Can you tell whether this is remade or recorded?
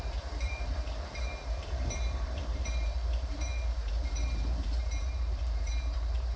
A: remade